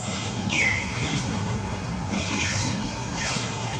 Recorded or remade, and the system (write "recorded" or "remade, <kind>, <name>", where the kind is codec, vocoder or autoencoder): remade, codec, SNAC